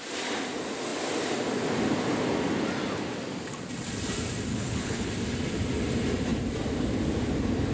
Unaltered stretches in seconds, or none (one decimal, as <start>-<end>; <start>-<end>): 0.0-4.5; 5.1-7.7